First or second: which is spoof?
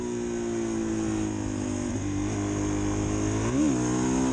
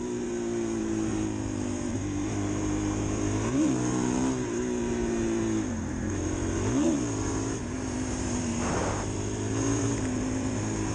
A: second